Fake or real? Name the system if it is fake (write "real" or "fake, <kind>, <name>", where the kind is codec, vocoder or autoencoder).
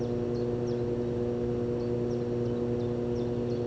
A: real